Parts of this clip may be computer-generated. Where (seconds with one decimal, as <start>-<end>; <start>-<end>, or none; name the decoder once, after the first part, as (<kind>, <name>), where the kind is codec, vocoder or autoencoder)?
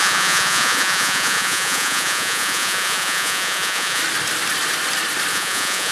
0.0-4.0 (vocoder, Vocos); 5.3-5.9